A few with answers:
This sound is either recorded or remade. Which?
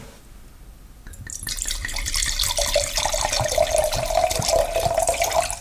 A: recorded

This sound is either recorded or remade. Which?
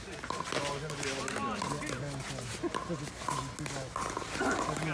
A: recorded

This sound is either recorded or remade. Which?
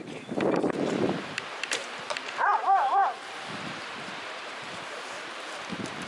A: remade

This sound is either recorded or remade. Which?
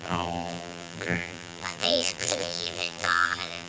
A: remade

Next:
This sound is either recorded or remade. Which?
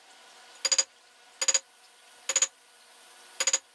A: recorded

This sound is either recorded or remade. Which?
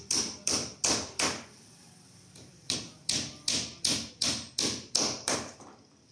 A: remade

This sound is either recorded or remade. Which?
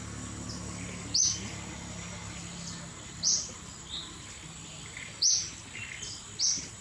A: recorded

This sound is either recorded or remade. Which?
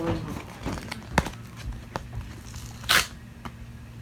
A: recorded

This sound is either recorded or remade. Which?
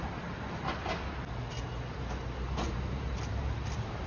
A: recorded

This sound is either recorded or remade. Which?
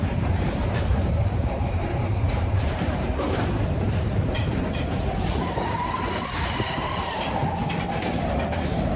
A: remade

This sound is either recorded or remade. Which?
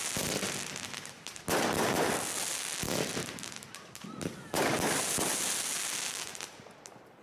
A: recorded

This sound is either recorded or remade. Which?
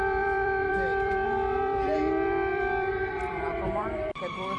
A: remade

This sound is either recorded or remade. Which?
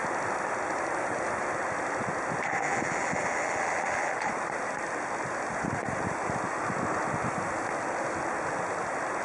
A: recorded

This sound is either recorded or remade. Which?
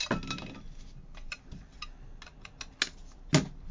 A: recorded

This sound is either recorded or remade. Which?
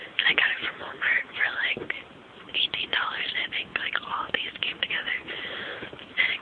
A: remade